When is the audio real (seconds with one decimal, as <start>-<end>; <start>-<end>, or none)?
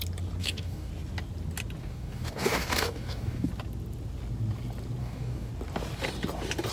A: 0.0-0.4; 0.9-1.8; 3.5-5.0; 5.5-6.7